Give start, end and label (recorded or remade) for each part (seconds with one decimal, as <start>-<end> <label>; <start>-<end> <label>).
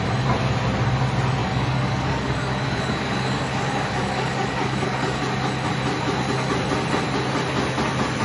0.0-1.4 recorded; 1.4-5.2 remade; 5.2-8.2 recorded